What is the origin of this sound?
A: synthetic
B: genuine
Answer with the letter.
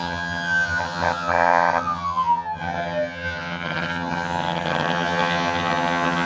A